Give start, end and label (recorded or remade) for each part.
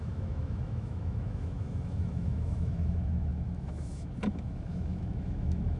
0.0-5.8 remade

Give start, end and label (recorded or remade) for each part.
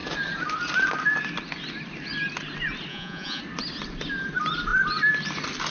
0.0-2.9 recorded; 2.9-3.4 remade; 3.4-5.7 recorded